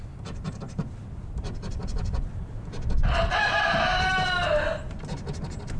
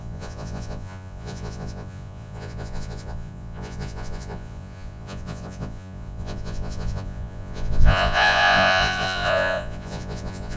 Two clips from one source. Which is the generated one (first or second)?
second